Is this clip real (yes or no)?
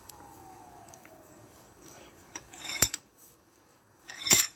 no